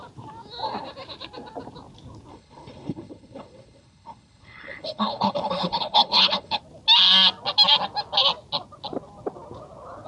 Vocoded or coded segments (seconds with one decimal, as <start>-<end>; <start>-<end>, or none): 2.3-6.6